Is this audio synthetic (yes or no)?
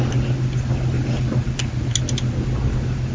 no